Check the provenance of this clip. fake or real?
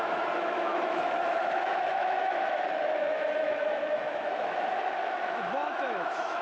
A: fake